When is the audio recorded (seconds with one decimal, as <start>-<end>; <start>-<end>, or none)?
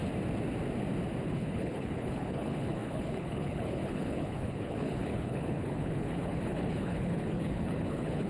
0.0-1.2